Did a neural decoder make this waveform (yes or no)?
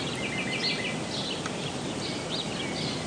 no